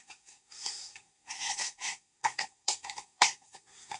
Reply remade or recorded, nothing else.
remade